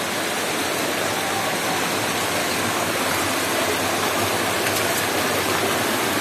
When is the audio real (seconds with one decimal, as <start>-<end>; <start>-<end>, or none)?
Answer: 0.0-2.4; 3.0-6.2